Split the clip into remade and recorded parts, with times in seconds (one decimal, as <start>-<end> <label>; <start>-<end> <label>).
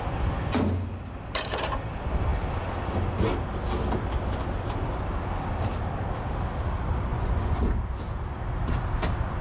0.0-7.1 recorded; 7.1-7.6 remade; 7.6-9.4 recorded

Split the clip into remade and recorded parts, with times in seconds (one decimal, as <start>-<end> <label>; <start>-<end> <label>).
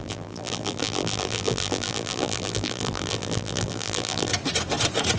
0.0-4.3 remade; 4.3-5.2 recorded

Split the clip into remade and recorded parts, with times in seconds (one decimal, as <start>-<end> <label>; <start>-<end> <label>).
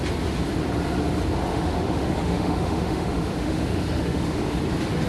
0.0-1.5 recorded; 1.5-4.6 remade; 4.6-5.1 recorded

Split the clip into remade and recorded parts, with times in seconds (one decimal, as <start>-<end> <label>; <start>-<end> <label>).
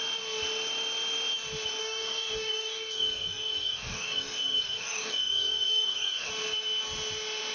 0.0-1.8 recorded; 1.8-6.3 remade; 6.3-7.5 recorded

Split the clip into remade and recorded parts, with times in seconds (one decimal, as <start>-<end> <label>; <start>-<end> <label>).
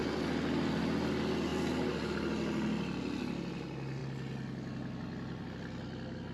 0.0-0.8 remade; 0.8-6.3 recorded